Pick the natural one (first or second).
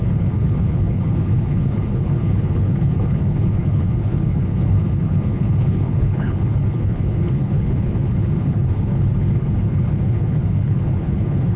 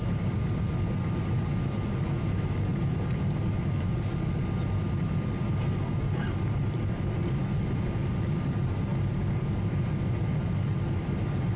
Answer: second